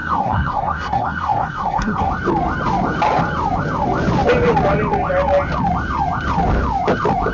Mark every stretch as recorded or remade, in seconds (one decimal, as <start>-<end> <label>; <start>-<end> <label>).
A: 0.0-2.1 remade; 2.1-7.3 recorded